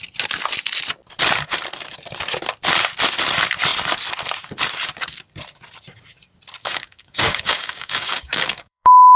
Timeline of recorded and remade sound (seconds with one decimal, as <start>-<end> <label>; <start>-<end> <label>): 0.0-6.6 recorded; 6.6-9.2 remade

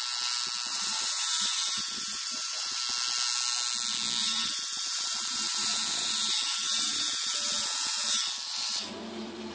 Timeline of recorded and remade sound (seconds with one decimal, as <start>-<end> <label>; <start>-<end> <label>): 0.0-0.7 recorded; 0.7-2.8 remade; 2.8-4.2 recorded; 4.2-9.5 remade

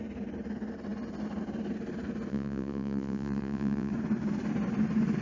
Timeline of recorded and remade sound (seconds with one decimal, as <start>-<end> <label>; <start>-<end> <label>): 0.0-2.3 recorded; 2.3-3.9 remade; 3.9-5.2 recorded